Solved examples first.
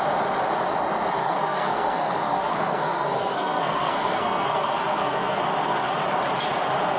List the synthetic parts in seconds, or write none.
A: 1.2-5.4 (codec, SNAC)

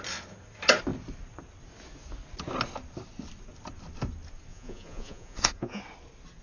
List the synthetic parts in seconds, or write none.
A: 4.5-5.8 (vocoder, Vocos)

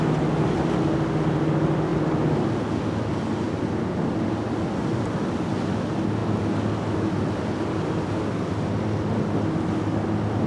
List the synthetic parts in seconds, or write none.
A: none

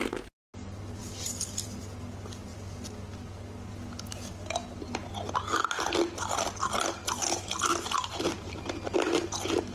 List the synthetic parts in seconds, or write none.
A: 1.0-1.8 (vocoder, BigVGAN v2); 7.7-8.6

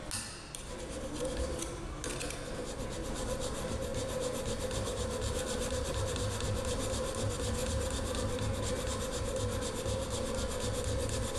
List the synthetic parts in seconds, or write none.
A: 3.9-6.0 (vocoder, BigVGAN v2); 7.6-8.6

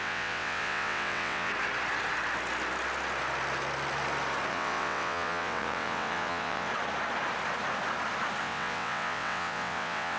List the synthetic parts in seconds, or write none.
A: 0.0-1.5 (vocoder, WaveNeXt); 4.5-6.7; 8.4-10.2

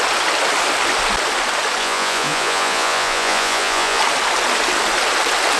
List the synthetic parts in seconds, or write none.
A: 1.8-4.0 (vocoder, Vocos)